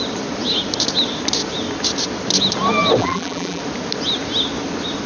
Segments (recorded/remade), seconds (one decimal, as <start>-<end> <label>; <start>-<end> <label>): 0.0-3.0 recorded; 3.0-3.6 remade; 3.6-5.1 recorded